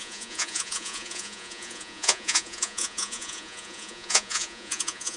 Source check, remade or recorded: remade